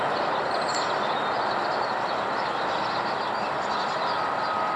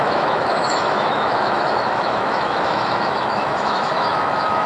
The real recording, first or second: first